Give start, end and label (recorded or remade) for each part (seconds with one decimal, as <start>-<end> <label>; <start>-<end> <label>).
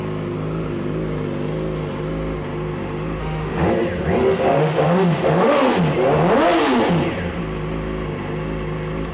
0.0-3.2 recorded; 3.2-3.7 remade; 3.7-4.2 recorded; 4.2-5.7 remade; 5.7-9.1 recorded